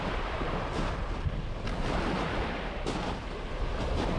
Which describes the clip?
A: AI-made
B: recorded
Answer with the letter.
B